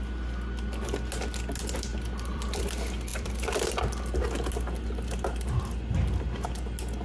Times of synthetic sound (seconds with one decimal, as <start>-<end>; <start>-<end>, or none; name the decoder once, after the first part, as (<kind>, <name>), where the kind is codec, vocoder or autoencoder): 1.9-2.7 (vocoder, BigVGAN v2); 3.1-3.7